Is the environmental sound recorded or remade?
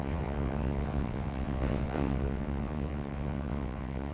remade